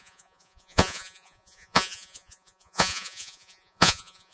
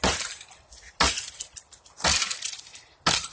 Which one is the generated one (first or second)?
first